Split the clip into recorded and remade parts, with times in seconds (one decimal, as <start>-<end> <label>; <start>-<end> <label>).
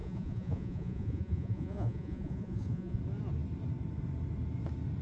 0.0-3.0 remade; 3.0-5.0 recorded